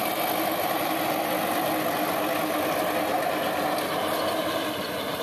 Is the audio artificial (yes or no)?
no